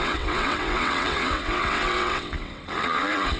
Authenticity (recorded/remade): remade